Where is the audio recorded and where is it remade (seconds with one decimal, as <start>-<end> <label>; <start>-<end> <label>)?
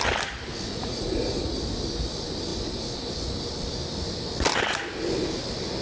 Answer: 0.0-0.7 recorded; 0.7-1.6 remade; 1.6-5.8 recorded